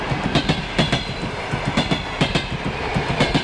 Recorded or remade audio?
recorded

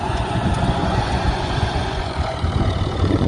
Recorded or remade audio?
remade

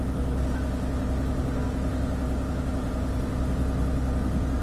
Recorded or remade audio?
recorded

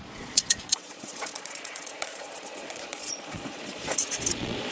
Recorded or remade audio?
remade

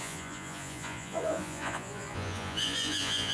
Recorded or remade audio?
remade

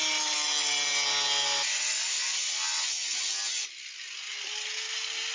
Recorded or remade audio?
recorded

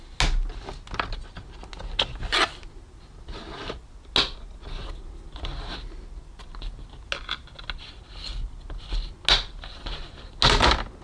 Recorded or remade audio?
recorded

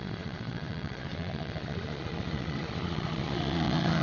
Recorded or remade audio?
remade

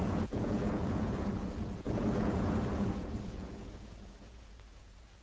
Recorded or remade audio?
remade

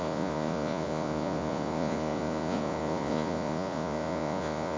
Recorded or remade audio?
remade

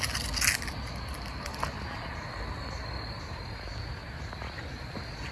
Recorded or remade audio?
recorded